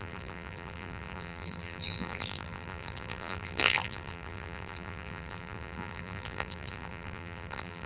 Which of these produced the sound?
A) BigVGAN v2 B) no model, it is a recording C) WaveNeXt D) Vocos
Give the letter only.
A